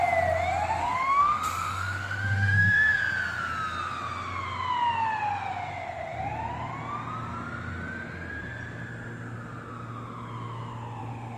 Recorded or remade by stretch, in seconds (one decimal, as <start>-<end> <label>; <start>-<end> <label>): 0.0-0.8 recorded; 0.8-3.0 remade; 3.0-11.4 recorded

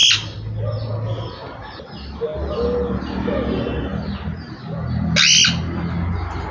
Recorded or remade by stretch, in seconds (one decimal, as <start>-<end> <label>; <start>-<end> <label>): 0.0-6.5 recorded

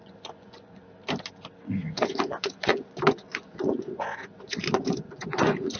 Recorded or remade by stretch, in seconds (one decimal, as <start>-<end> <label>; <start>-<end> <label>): 0.0-0.8 remade; 0.8-1.6 recorded; 1.6-5.8 remade

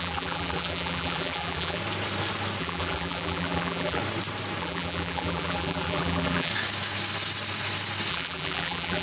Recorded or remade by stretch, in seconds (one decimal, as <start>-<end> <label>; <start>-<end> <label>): 0.0-1.8 remade; 1.8-2.6 recorded; 2.6-4.0 remade; 4.0-4.6 recorded; 4.6-6.5 remade; 6.5-8.1 recorded; 8.1-9.0 remade

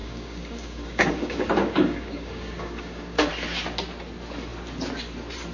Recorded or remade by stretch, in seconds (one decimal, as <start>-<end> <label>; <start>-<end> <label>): 0.0-3.3 remade; 3.3-5.5 recorded

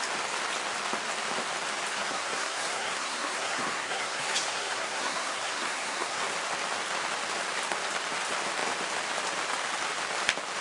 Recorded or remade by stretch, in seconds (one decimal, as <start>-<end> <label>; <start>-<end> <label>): 0.0-1.9 recorded; 1.9-6.2 remade; 6.2-10.6 recorded

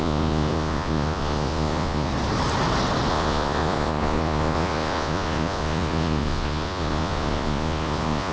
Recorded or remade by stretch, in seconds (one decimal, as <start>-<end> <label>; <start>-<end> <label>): 0.0-2.1 remade; 2.1-3.1 recorded; 3.1-8.3 remade